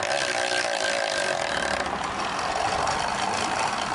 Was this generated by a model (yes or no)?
no